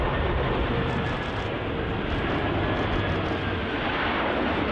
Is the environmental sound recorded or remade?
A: recorded